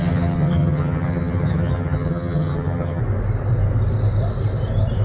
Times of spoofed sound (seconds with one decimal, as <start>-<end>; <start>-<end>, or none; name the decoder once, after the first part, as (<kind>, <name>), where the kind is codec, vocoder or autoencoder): 0.0-3.0 (vocoder, HiFi-GAN)